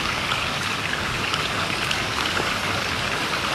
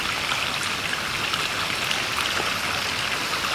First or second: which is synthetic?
first